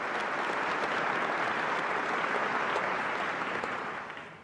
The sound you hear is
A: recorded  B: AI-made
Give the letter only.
A